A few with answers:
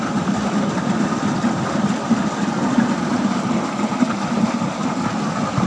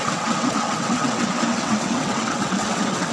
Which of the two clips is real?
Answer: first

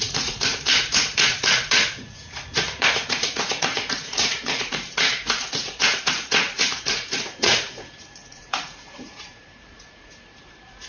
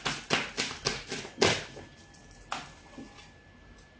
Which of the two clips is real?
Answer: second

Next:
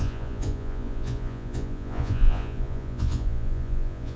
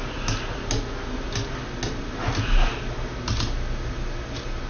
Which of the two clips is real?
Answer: second